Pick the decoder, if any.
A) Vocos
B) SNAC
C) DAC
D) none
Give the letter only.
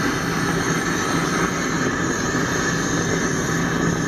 D